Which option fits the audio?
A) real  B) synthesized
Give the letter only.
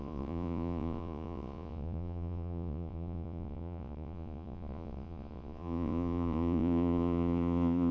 B